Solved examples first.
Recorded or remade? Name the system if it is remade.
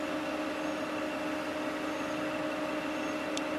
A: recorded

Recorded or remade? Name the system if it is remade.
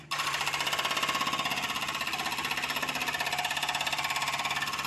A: recorded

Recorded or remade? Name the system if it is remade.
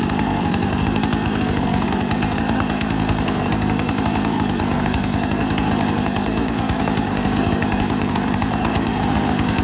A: remade, codec, SNAC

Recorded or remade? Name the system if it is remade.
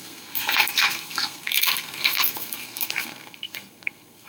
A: remade, codec, SNAC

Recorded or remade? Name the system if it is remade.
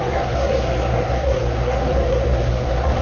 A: remade, codec, SNAC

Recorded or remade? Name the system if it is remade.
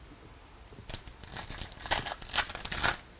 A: recorded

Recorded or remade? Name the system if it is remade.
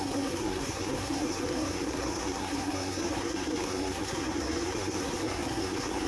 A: remade, codec, SNAC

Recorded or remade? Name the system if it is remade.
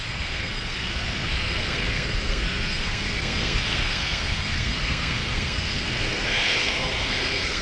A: remade, codec, SNAC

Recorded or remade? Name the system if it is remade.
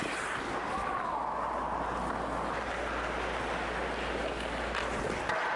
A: recorded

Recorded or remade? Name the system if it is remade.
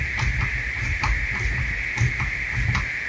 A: recorded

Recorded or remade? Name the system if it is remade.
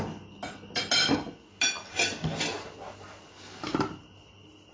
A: recorded